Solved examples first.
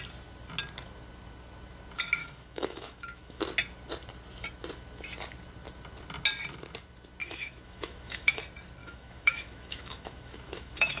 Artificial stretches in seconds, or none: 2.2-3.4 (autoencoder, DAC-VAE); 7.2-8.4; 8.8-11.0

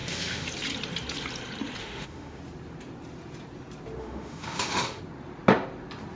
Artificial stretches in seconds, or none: 0.0-0.5 (autoencoder, DAC-VAE); 1.8-2.4; 4.0-5.0

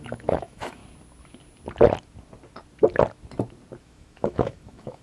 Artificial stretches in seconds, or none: 0.0-0.8 (autoencoder, DAC-VAE); 3.8-5.0

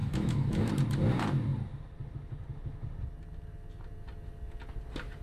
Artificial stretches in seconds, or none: 0.0-0.7 (autoencoder, DAC-VAE)

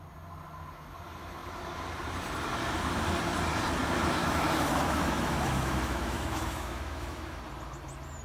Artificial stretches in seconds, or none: 4.2-7.4 (autoencoder, DAC-VAE)

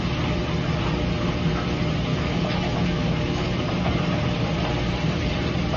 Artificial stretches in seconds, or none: 2.1-3.7 (autoencoder, DAC-VAE)